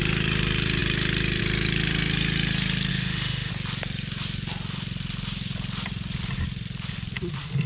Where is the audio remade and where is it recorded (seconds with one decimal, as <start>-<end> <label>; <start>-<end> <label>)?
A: 0.0-2.9 recorded; 2.9-3.5 remade; 3.5-7.7 recorded